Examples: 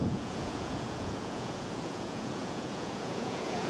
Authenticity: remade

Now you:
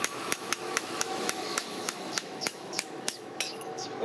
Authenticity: remade